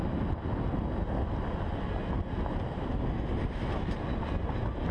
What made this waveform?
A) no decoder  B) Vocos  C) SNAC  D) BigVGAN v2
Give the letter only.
A